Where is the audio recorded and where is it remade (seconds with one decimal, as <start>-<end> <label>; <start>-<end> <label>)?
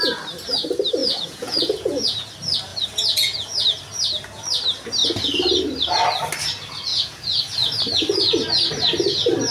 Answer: 0.0-1.0 recorded; 1.0-2.3 remade; 2.3-2.7 recorded; 2.7-3.8 remade; 3.8-6.9 recorded; 6.9-7.4 remade; 7.4-9.5 recorded